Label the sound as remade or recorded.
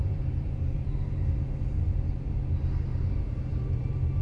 remade